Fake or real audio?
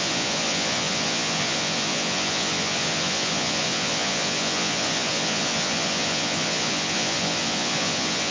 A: fake